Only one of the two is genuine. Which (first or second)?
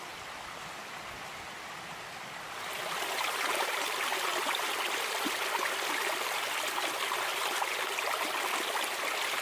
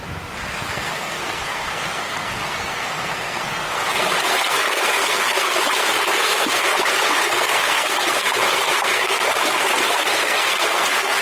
first